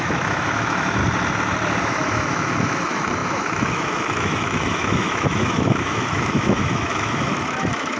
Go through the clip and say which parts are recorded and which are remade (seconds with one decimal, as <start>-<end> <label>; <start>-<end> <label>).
0.0-1.0 remade; 1.0-1.8 recorded; 1.8-8.0 remade